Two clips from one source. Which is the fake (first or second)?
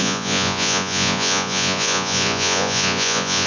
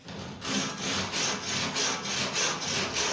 first